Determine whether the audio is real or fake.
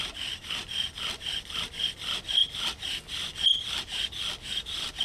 real